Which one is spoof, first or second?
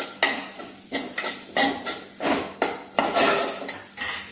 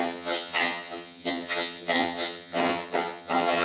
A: second